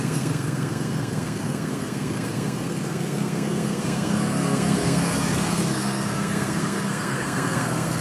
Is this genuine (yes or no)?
no